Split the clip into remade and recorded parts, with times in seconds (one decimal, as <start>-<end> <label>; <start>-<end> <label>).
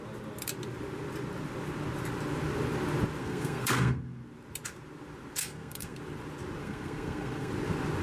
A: 0.0-3.2 recorded; 3.2-4.2 remade; 4.2-5.4 recorded; 5.4-6.0 remade; 6.0-6.6 recorded; 6.6-7.5 remade; 7.5-8.0 recorded